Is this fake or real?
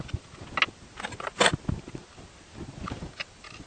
real